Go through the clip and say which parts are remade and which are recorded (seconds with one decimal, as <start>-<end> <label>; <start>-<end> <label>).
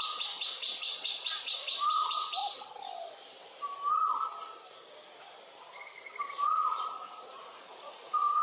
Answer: 0.0-2.4 remade; 2.4-6.2 recorded; 6.2-8.4 remade